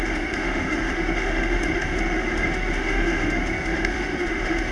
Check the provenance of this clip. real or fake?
fake